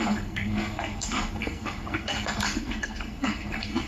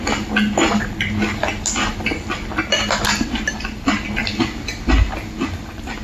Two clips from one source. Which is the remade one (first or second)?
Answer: first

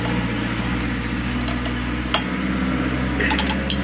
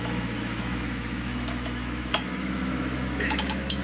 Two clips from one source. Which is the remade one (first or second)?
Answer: second